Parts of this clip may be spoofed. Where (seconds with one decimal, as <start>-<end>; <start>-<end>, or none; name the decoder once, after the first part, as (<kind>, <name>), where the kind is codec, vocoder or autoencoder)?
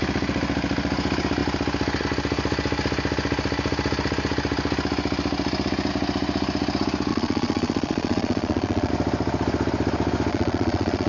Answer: 7.1-8.9 (vocoder, Vocos); 10.3-11.1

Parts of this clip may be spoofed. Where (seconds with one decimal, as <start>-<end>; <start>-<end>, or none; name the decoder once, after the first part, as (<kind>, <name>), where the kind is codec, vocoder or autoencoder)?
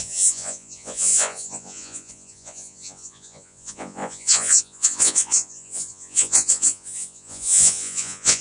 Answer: 0.0-8.4 (vocoder, Vocos)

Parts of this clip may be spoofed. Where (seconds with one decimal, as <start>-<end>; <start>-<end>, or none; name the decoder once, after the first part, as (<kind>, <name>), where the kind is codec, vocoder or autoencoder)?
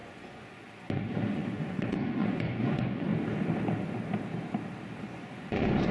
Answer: 0.0-3.1 (vocoder, Vocos); 5.0-5.9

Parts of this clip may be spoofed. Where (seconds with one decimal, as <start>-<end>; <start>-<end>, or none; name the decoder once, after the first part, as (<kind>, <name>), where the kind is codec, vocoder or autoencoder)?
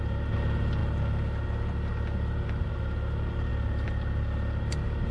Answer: none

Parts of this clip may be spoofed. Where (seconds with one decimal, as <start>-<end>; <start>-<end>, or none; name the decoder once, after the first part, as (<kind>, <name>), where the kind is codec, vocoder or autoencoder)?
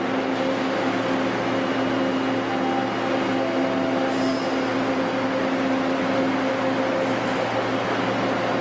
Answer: none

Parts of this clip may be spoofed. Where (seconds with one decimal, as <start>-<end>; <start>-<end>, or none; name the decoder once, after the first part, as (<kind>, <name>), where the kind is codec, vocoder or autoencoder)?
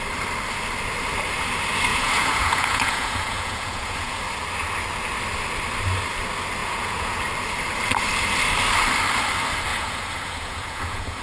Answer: 1.9-4.2 (vocoder, Vocos); 6.6-7.2; 9.7-11.2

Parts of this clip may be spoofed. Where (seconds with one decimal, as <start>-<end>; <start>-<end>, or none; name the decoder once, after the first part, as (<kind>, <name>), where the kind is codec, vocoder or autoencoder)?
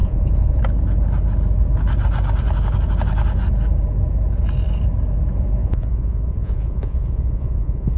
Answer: 0.0-0.6 (vocoder, Vocos); 5.6-8.0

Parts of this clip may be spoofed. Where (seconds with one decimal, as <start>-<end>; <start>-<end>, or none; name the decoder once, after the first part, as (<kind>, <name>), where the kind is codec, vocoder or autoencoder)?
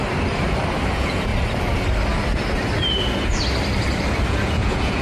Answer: 0.9-1.3 (vocoder, Vocos); 4.3-5.0